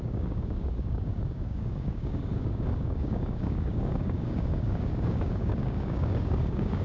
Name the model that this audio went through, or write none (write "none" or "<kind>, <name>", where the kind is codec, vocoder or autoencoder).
codec, DAC